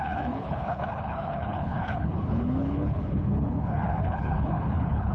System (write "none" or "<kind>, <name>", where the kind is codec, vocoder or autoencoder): codec, HILCodec